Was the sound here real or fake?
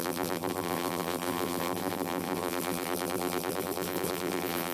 fake